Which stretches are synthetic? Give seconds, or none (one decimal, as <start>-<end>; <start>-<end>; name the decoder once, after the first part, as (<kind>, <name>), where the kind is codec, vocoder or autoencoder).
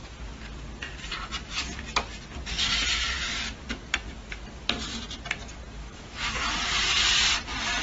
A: 5.8-6.3 (autoencoder, DAC-VAE)